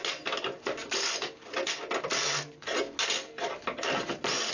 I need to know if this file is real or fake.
real